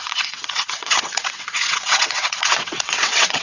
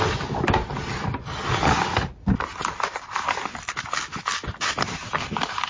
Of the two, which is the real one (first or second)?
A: second